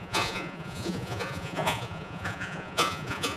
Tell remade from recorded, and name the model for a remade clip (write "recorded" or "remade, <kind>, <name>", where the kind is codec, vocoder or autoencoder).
remade, vocoder, Vocos